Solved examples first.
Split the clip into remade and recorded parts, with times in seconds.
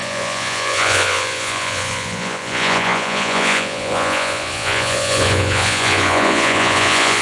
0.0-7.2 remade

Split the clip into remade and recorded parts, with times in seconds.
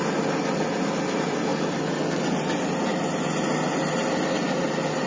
0.0-5.1 recorded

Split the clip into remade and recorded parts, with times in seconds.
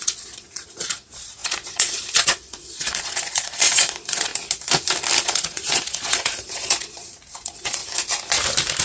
0.0-4.3 remade; 4.3-5.2 recorded; 5.2-7.8 remade; 7.8-8.8 recorded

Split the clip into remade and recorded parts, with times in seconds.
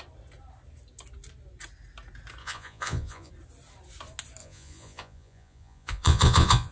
0.0-2.4 recorded; 2.4-3.3 remade; 3.3-4.4 recorded; 4.4-6.7 remade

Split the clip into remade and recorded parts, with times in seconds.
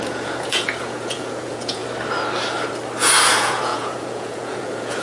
0.0-1.8 remade; 1.8-3.0 recorded; 3.0-5.0 remade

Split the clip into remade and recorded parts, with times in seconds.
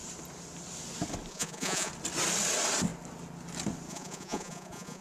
0.0-1.3 recorded; 1.3-1.9 remade; 1.9-3.9 recorded; 3.9-5.0 remade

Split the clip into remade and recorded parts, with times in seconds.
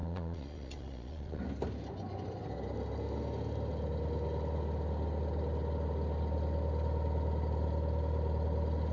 0.0-1.4 remade; 1.4-8.9 recorded